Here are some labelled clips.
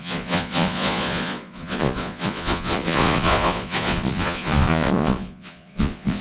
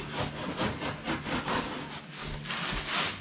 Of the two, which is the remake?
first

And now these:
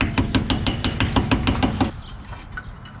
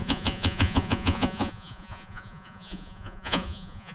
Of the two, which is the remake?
second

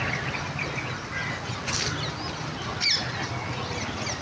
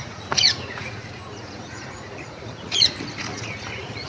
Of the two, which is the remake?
second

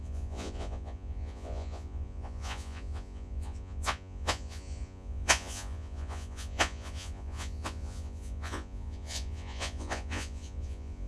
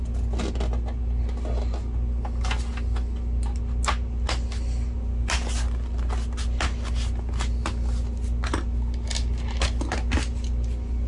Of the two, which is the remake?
first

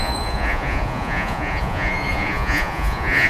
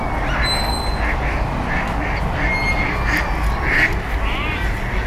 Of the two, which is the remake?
first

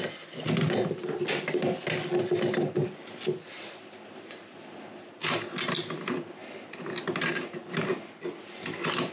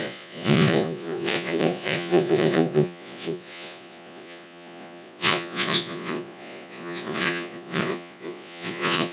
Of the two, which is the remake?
second